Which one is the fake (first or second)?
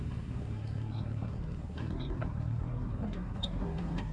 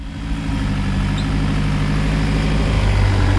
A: first